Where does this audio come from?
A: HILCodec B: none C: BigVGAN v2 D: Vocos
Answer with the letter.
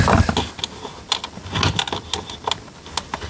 B